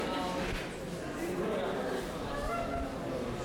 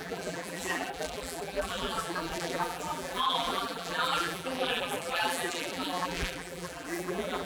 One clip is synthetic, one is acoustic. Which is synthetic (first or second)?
second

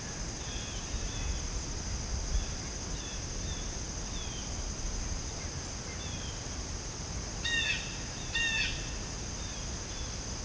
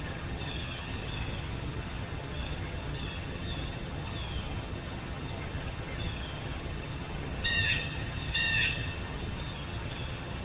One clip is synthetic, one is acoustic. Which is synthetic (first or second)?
second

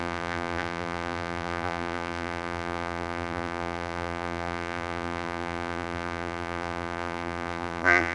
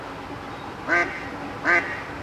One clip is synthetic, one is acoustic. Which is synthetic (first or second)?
first